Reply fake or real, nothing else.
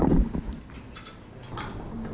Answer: real